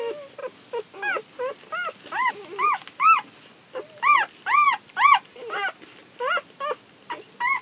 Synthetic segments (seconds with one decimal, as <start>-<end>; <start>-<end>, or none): none